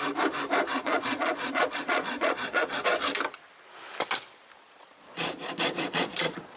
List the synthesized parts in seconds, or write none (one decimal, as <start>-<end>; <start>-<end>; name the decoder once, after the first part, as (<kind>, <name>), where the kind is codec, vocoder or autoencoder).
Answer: 0.7-2.8 (vocoder, Vocos); 4.6-6.6